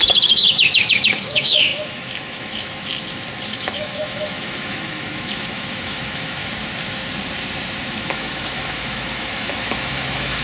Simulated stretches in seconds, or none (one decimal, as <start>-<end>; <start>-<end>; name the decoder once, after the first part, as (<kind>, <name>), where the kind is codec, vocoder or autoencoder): 0.0-2.9 (autoencoder, DAC-VAE); 3.6-6.4; 7.8-10.4

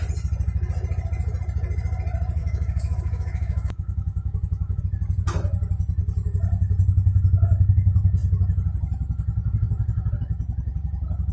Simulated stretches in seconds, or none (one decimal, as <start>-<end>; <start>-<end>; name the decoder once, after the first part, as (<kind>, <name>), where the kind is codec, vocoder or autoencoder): 2.4-4.8 (autoencoder, DAC-VAE)